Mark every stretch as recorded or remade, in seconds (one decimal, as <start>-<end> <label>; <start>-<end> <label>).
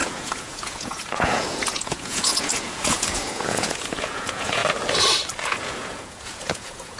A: 0.0-4.6 remade; 4.6-5.5 recorded; 5.5-7.0 remade